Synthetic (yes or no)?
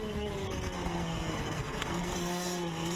yes